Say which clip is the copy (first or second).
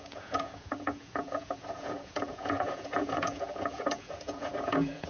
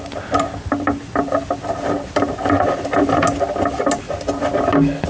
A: first